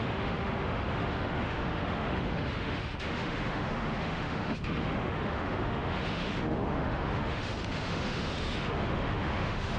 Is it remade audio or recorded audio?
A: remade